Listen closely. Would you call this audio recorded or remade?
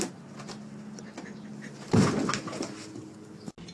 recorded